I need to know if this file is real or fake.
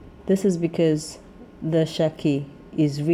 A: real